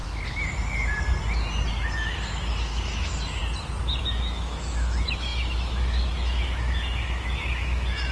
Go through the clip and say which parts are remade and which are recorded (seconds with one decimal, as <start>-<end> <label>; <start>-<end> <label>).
0.0-1.7 recorded; 1.7-3.4 remade; 3.4-4.0 recorded; 4.0-8.1 remade